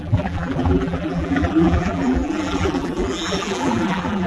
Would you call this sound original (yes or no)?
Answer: no